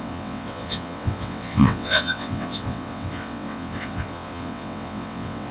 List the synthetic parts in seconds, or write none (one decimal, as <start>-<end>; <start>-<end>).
0.0-5.5